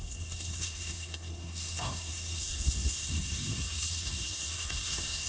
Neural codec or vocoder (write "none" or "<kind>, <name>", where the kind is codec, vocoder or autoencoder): codec, SNAC